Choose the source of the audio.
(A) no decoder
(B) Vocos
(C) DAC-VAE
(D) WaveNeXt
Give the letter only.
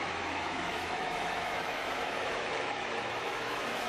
C